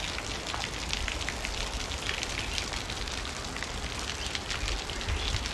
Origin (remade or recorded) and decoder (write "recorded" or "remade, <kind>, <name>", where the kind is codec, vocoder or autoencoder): recorded